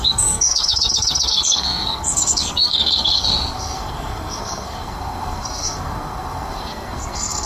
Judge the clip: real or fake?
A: fake